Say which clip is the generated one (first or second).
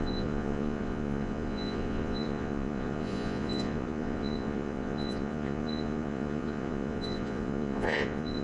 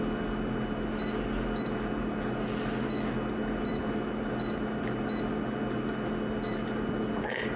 first